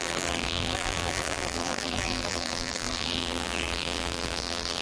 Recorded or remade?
remade